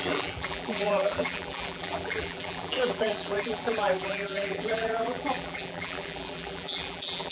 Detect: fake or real fake